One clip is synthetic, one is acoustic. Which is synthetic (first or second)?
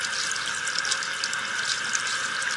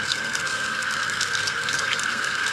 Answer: second